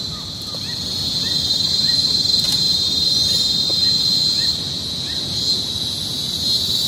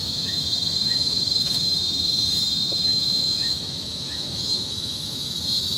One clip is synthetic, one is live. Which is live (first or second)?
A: first